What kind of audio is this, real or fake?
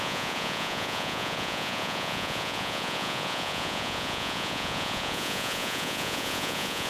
fake